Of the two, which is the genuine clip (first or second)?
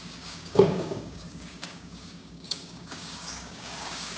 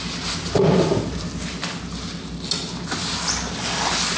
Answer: second